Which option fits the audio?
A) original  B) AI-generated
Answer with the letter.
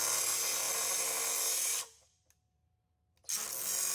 A